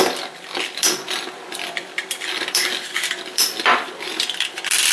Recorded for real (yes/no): no